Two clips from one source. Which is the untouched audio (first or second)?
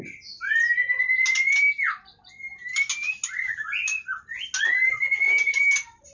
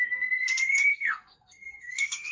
first